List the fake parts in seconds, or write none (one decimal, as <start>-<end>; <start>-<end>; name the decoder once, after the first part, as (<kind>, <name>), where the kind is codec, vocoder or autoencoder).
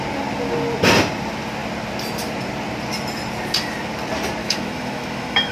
4.4-5.5 (autoencoder, DAC-VAE)